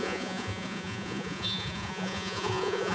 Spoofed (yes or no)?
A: yes